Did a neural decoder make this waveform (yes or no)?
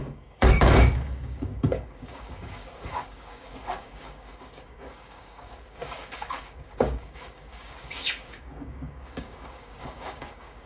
yes